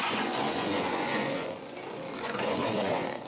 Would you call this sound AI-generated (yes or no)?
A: yes